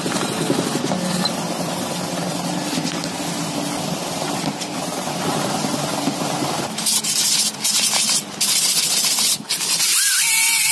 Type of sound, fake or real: real